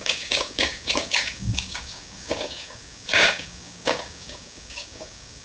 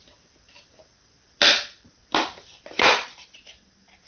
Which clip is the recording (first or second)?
second